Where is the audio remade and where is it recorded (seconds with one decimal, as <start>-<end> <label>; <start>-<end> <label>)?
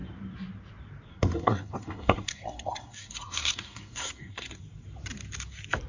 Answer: 0.0-1.1 recorded; 1.1-4.6 remade; 4.6-5.9 recorded